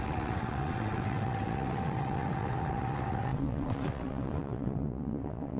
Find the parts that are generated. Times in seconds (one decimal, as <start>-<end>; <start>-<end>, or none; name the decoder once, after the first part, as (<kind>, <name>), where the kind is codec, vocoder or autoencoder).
0.0-5.6 (vocoder, WaveNeXt)